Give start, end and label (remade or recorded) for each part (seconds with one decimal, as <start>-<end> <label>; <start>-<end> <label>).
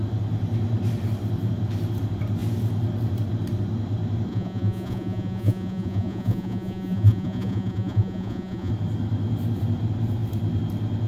0.0-4.3 recorded; 4.3-8.7 remade; 8.7-11.1 recorded